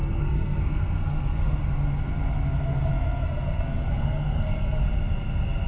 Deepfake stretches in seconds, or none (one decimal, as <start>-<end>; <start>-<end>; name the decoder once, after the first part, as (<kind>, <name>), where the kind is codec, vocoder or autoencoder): 0.0-1.6 (codec, SNAC); 2.9-4.8